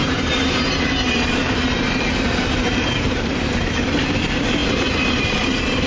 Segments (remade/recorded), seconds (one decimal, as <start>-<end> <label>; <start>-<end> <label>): 0.0-4.6 remade; 4.6-5.2 recorded; 5.2-5.9 remade